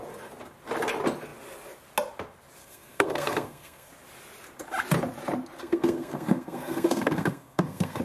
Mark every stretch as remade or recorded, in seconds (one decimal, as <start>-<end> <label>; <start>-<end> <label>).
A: 0.0-2.6 recorded; 2.6-3.9 remade; 3.9-5.6 recorded; 5.6-8.0 remade